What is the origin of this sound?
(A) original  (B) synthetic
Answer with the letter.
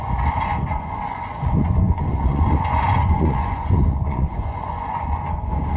B